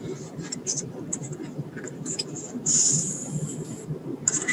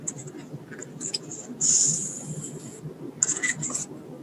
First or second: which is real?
second